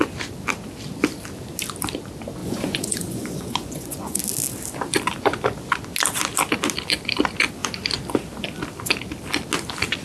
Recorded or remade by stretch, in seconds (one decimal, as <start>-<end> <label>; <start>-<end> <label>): 0.0-2.4 recorded; 2.4-4.2 remade; 4.2-10.0 recorded